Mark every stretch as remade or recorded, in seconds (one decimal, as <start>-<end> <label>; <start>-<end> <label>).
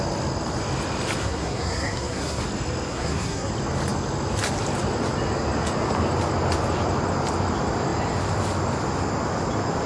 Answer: 0.0-1.2 recorded; 1.2-2.4 remade; 2.4-2.9 recorded; 2.9-3.5 remade; 3.5-9.9 recorded